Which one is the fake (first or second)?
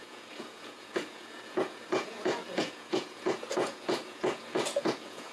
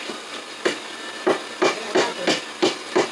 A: first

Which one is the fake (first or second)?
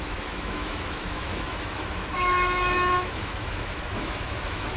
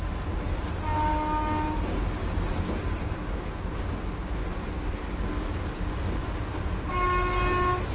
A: first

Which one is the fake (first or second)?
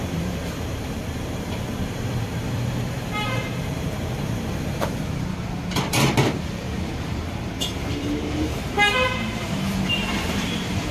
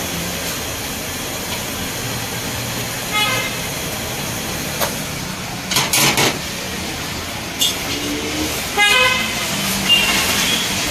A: first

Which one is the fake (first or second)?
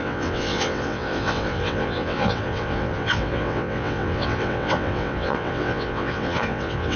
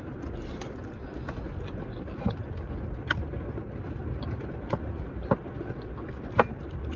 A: first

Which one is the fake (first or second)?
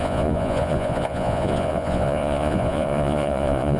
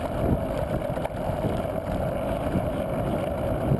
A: first